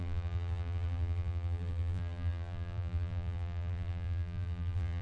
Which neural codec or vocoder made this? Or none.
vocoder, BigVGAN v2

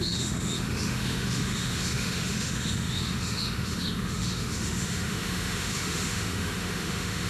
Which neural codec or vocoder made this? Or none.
autoencoder, DAC-VAE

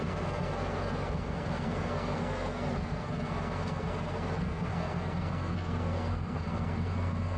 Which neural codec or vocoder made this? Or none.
codec, SNAC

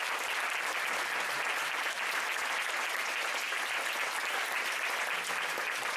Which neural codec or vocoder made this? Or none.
none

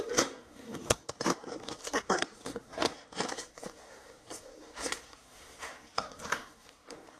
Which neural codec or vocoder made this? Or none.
codec, SNAC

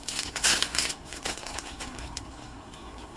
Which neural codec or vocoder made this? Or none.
codec, SNAC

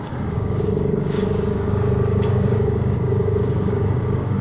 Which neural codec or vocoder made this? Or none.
codec, DAC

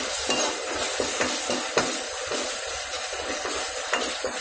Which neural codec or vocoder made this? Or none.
none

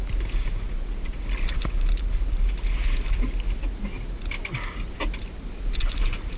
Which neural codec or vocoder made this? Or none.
none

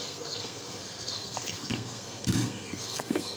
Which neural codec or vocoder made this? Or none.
codec, SNAC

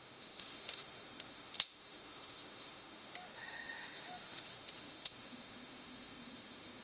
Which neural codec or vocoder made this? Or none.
autoencoder, DAC-VAE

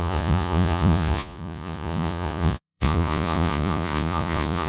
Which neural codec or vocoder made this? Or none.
vocoder, Vocos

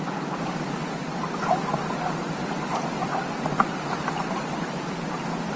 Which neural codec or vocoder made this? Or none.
none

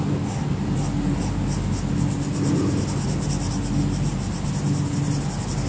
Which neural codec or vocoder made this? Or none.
none